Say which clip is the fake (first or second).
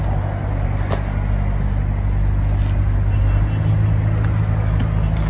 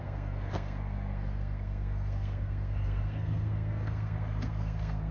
second